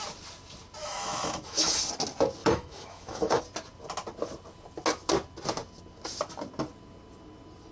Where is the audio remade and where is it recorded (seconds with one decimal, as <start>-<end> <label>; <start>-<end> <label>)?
0.0-0.8 recorded; 0.8-1.8 remade; 1.8-2.4 recorded; 2.4-3.4 remade; 3.4-7.7 recorded